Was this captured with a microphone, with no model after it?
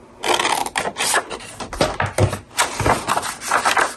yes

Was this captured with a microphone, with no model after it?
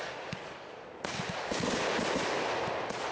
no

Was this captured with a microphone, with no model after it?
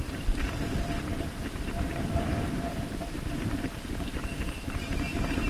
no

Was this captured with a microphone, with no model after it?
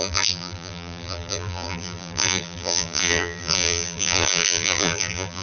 no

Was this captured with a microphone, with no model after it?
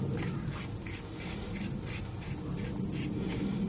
yes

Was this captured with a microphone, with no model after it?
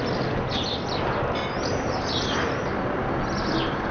yes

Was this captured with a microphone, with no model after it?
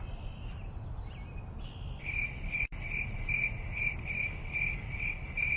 yes